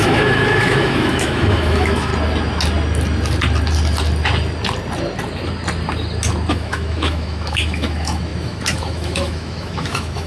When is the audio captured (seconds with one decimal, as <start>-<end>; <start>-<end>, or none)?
2.1-6.5